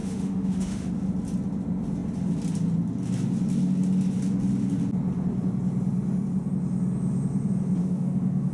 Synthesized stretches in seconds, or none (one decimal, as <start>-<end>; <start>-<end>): 0.0-0.9; 7.8-8.5